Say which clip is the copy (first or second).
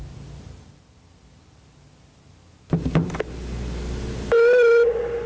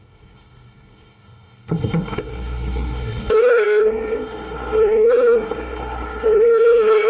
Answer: second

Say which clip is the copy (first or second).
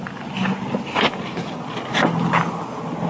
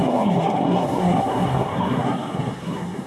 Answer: second